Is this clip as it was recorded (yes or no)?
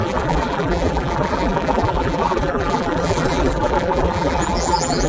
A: no